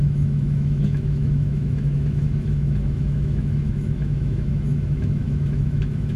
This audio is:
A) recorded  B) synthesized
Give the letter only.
B